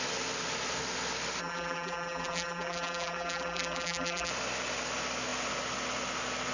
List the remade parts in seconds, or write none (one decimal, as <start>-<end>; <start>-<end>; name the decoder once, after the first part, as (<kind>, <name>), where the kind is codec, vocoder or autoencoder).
1.4-4.3 (vocoder, BigVGAN v2)